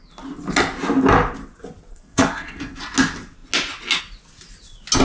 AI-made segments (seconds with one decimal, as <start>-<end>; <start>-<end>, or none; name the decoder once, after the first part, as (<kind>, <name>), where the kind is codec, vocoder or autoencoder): 1.9-2.8 (codec, SNAC)